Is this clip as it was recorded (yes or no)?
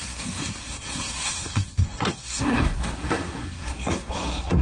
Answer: no